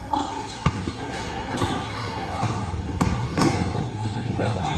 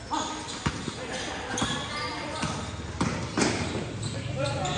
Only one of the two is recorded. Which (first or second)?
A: second